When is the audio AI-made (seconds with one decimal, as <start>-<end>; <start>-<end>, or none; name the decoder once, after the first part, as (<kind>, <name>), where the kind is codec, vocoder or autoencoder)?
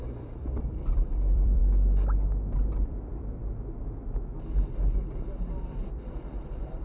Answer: 0.0-1.6 (vocoder, BigVGAN v2); 2.8-3.4; 5.4-6.8